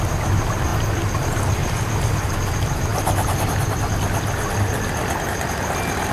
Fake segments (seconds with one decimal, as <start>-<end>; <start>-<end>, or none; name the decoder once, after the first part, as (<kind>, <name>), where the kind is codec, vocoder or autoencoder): none